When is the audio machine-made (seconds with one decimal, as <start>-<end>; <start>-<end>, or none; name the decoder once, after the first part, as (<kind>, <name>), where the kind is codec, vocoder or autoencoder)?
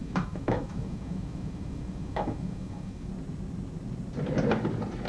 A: 0.0-3.1 (autoencoder, DAC-VAE)